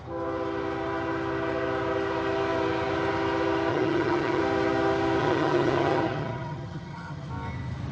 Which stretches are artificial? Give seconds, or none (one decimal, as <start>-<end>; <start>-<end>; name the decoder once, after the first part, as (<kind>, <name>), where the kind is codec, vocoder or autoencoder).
3.7-4.4 (vocoder, HiFi-GAN); 5.2-7.3